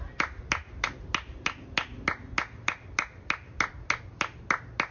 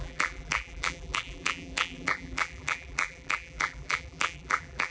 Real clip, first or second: first